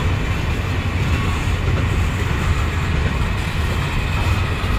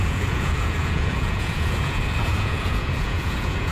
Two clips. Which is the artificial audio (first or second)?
second